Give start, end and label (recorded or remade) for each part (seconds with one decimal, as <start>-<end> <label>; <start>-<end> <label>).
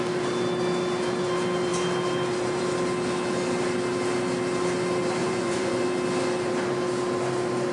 0.0-5.2 recorded; 5.2-5.8 remade; 5.8-7.7 recorded